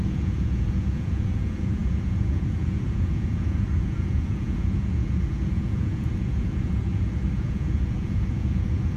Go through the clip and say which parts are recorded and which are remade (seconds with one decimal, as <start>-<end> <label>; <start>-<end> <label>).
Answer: 0.0-9.0 remade